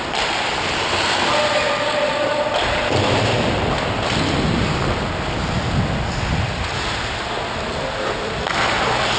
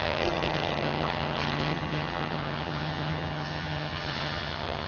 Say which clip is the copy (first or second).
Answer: second